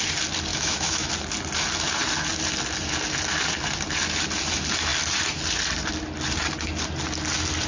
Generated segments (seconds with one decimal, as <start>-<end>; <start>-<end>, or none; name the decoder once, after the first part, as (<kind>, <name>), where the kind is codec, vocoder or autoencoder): 0.5-1.1 (autoencoder, DAC-VAE)

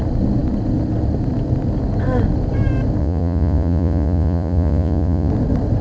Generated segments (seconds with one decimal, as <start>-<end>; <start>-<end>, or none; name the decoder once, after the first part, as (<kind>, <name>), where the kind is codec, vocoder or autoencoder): 3.0-5.3 (vocoder, Vocos)